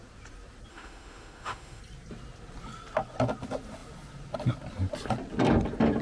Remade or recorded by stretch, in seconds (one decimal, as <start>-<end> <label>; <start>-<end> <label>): 0.0-0.7 recorded; 0.7-1.8 remade; 1.8-6.0 recorded